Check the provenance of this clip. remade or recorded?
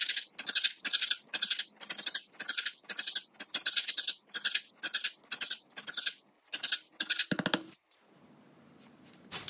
recorded